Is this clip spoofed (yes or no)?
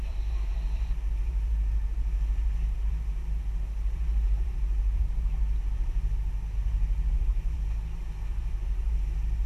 yes